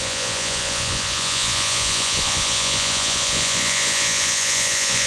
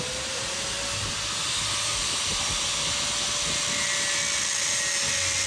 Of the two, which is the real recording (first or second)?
second